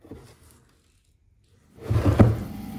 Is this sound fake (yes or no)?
no